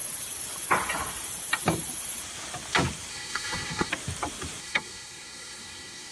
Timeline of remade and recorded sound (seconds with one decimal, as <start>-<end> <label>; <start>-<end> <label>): 0.0-3.1 recorded; 3.1-3.9 remade; 3.9-4.6 recorded; 4.6-6.1 remade